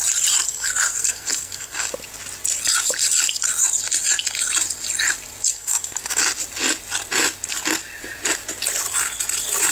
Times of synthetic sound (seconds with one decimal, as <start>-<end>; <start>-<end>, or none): 0.5-1.9; 5.5-6.2